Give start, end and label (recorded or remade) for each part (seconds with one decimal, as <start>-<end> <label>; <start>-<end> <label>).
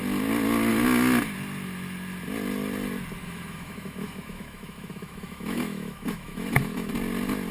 0.0-3.2 recorded; 3.2-6.9 remade; 6.9-7.5 recorded